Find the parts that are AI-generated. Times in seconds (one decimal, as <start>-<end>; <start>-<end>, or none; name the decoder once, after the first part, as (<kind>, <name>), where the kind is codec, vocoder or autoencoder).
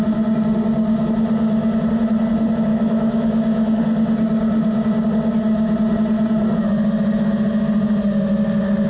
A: 2.7-3.8 (autoencoder, DAC-VAE)